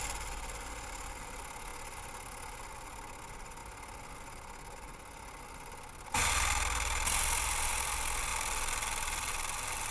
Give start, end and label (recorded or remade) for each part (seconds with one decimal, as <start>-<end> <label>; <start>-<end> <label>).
0.0-9.9 recorded